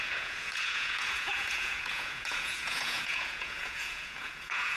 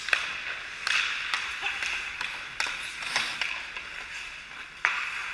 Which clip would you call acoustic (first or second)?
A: second